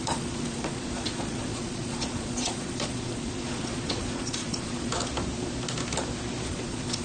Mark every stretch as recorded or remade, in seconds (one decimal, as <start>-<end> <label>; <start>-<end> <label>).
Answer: 0.0-4.9 remade; 4.9-6.5 recorded; 6.5-7.0 remade